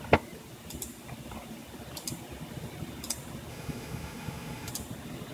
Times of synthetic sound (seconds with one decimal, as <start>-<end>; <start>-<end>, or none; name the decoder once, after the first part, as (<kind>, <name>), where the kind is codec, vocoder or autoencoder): 3.5-4.7 (autoencoder, DAC-VAE)